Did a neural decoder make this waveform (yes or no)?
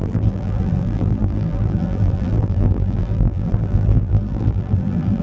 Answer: yes